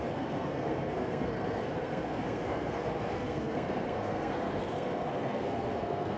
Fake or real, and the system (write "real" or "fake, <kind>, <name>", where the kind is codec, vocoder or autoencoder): fake, codec, SNAC